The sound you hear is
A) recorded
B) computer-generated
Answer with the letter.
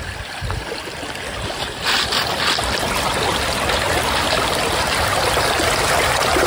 B